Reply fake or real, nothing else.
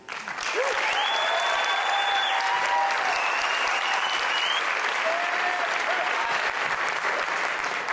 real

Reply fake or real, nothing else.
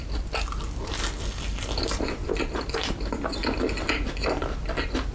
real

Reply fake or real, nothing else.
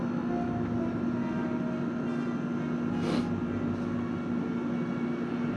real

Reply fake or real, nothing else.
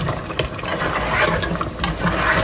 real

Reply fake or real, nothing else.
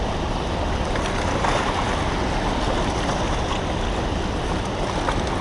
real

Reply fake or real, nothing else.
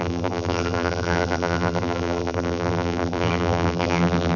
fake